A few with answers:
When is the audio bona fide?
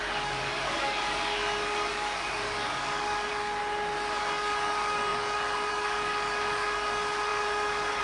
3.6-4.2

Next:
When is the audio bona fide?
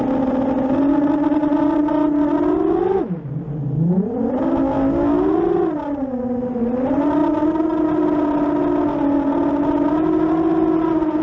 0.0-11.2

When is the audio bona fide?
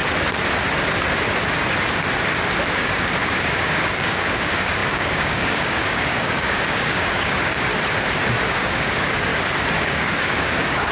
0.0-2.7; 7.7-8.5; 9.3-9.8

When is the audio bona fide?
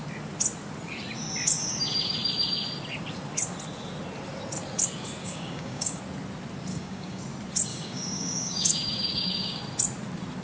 0.0-5.2; 6.0-6.7; 7.2-7.7; 9.6-10.4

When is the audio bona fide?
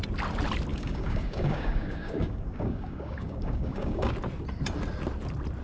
0.0-0.7; 4.1-5.6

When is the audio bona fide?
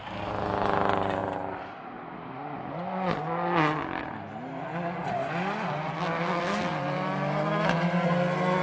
0.0-8.6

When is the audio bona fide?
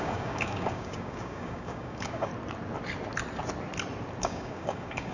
2.3-4.2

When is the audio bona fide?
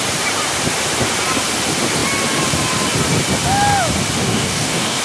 0.0-4.2